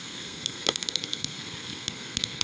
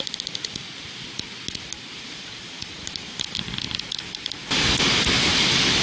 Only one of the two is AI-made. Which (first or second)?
first